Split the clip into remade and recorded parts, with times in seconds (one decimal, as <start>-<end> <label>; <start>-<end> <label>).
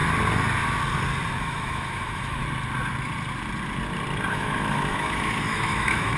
0.0-1.4 recorded; 1.4-2.4 remade; 2.4-4.3 recorded; 4.3-6.2 remade